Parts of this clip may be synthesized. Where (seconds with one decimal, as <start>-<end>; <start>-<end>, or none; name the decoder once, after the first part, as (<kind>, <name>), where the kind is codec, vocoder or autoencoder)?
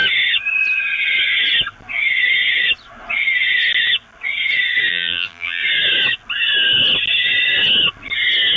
4.9-5.6 (vocoder, BigVGAN v2)